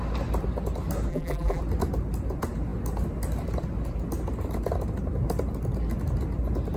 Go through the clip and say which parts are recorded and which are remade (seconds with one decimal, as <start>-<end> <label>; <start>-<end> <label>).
0.0-1.1 recorded; 1.1-1.6 remade; 1.6-6.8 recorded